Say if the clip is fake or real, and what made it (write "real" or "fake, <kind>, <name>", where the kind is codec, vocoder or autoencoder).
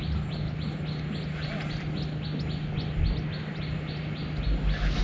real